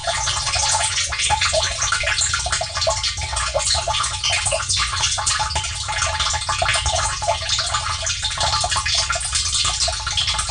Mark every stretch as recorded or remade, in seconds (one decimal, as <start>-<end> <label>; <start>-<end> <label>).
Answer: 0.0-1.9 remade; 1.9-3.3 recorded; 3.3-5.3 remade; 5.3-6.7 recorded; 6.7-7.4 remade; 7.4-10.5 recorded